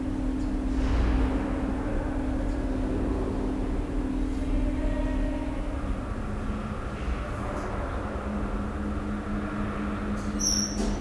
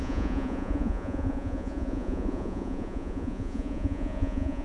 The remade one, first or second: second